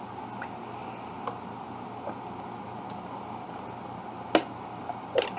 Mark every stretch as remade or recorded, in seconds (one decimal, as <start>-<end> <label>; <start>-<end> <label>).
0.0-5.4 recorded